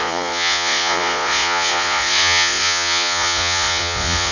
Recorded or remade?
remade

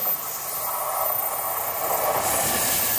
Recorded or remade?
recorded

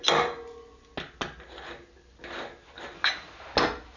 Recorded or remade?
recorded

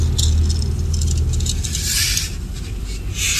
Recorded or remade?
recorded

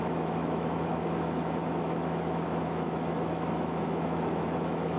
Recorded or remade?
remade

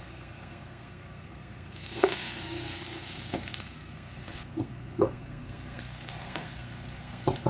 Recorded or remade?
remade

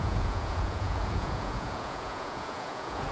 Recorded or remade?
remade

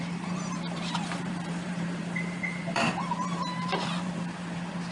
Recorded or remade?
remade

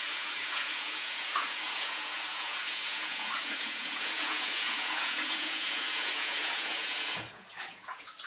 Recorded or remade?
remade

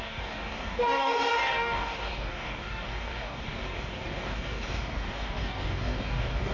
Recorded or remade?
remade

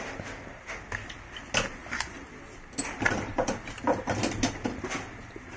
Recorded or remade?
recorded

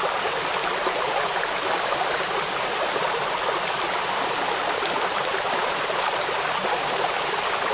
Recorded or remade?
recorded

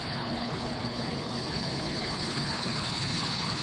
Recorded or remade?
remade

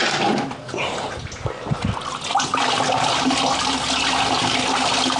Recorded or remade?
recorded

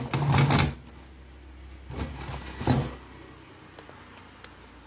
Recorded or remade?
recorded